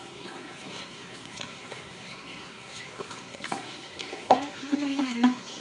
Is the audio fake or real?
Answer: fake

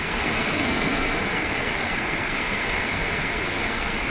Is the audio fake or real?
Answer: fake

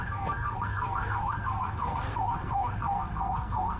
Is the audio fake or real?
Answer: fake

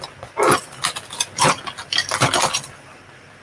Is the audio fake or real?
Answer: real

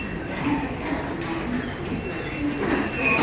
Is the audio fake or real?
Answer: real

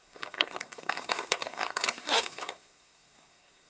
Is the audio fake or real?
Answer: fake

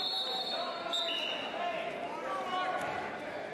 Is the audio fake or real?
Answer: real